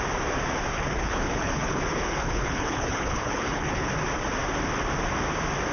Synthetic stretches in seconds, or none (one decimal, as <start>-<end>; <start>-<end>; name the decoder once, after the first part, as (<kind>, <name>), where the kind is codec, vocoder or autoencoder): 0.7-3.9 (codec, HILCodec)